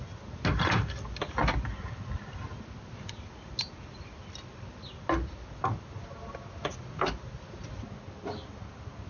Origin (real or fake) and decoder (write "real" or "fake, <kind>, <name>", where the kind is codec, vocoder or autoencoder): real